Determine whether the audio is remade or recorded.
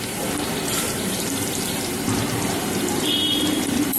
remade